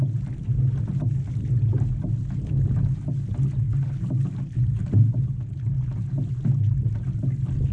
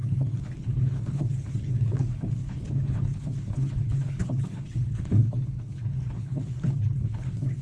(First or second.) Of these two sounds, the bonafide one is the first